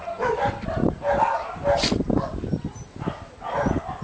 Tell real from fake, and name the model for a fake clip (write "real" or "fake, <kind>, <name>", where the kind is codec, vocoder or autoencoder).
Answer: real